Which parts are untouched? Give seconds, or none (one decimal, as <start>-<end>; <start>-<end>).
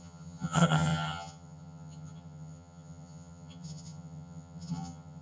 none